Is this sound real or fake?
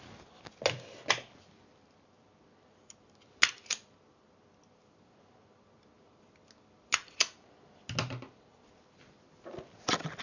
real